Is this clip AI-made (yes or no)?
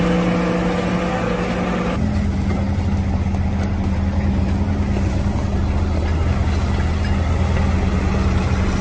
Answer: no